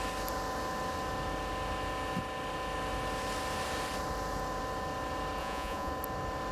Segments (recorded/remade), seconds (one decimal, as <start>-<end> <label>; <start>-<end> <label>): 0.0-5.4 recorded; 5.4-5.9 remade; 5.9-6.5 recorded